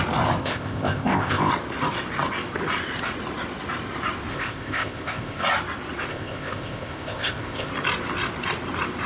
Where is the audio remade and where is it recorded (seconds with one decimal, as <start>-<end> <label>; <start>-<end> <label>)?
0.0-0.4 recorded; 0.4-1.5 remade; 1.5-4.3 recorded; 4.3-5.4 remade; 5.4-6.1 recorded; 6.1-7.7 remade; 7.7-9.1 recorded